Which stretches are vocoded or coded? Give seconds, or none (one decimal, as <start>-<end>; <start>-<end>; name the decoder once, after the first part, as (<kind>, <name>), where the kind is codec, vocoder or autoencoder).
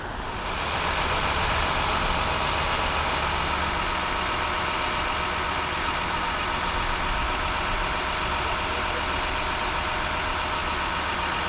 none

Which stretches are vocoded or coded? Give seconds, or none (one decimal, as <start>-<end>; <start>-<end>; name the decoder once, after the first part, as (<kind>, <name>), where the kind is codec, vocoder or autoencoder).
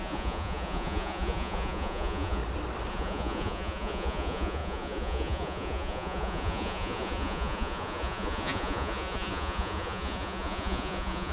0.0-2.4 (vocoder, Vocos); 2.9-11.3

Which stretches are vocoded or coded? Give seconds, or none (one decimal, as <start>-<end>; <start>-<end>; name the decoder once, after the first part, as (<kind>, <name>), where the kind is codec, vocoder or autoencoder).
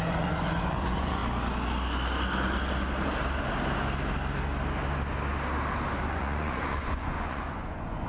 0.0-1.2 (vocoder, Vocos); 6.1-8.1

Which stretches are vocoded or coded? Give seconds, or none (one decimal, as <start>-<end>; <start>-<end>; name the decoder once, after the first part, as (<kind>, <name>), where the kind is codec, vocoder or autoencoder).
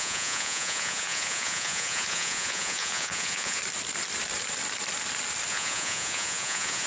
0.0-3.6 (vocoder, Vocos); 5.5-6.9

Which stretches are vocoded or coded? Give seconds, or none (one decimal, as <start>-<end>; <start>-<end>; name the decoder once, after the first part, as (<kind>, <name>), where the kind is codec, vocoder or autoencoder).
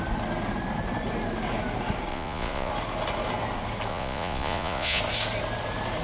2.1-2.7 (vocoder, Vocos); 3.9-5.0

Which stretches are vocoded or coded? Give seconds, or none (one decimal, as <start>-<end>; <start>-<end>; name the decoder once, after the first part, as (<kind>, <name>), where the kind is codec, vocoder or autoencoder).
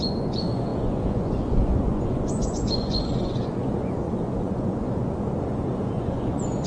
0.0-6.7 (vocoder, Vocos)